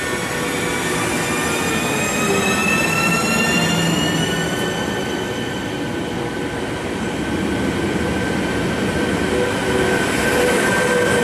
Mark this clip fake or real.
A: real